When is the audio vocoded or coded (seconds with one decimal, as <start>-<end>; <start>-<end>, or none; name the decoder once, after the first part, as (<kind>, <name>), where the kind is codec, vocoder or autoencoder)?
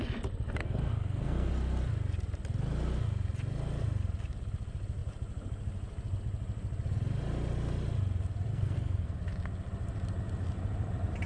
0.6-1.5 (codec, SNAC); 8.5-9.2